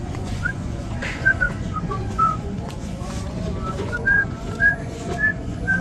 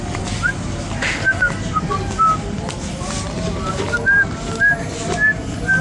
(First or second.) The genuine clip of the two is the second